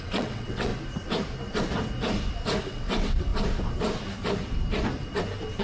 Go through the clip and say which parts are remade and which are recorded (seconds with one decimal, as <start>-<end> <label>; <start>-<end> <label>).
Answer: 0.0-0.7 remade; 0.7-2.6 recorded; 2.6-3.3 remade; 3.3-5.6 recorded